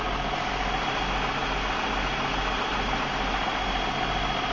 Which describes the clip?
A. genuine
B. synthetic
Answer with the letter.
A